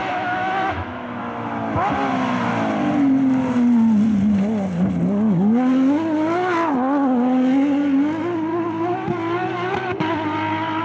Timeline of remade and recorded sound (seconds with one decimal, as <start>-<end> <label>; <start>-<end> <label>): 0.0-1.2 remade; 1.2-10.8 recorded